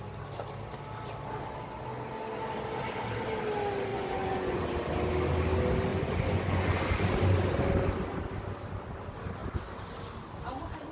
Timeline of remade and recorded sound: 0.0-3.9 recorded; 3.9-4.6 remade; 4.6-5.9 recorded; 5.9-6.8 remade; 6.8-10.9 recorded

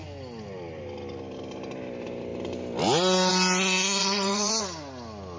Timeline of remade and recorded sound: 0.0-4.0 recorded; 4.0-4.5 remade; 4.5-5.4 recorded

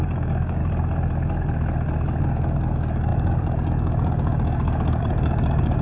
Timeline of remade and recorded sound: 0.0-0.6 remade; 0.6-2.2 recorded; 2.2-5.8 remade

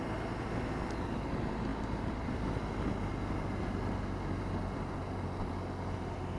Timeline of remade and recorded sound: 0.0-6.4 recorded

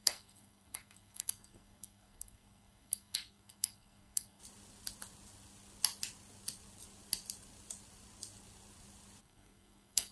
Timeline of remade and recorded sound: 0.0-4.4 remade; 4.4-9.2 recorded; 9.2-10.1 remade

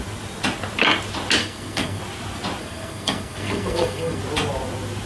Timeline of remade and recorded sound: 0.0-1.4 recorded; 1.4-2.0 remade; 2.0-2.6 recorded; 2.6-4.2 remade; 4.2-5.1 recorded

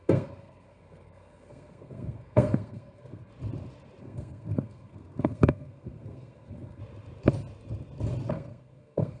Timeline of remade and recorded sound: 0.0-3.3 remade; 3.3-4.0 recorded; 4.0-6.8 remade; 6.8-8.3 recorded; 8.3-9.2 remade